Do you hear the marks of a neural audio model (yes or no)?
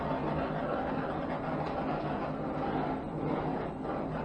no